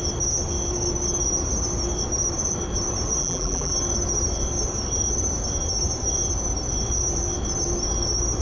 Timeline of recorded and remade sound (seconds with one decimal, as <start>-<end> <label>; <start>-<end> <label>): 0.0-3.2 recorded; 3.2-3.7 remade; 3.7-8.4 recorded